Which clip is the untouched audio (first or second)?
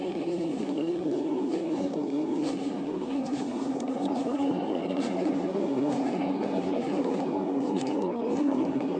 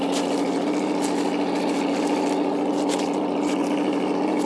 second